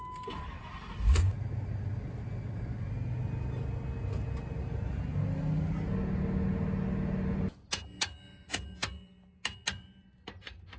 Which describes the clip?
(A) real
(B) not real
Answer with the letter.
A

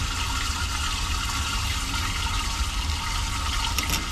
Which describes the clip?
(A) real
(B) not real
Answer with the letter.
A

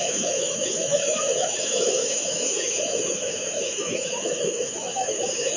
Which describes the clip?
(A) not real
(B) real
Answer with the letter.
A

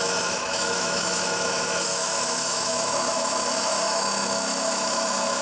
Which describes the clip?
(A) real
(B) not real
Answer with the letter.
B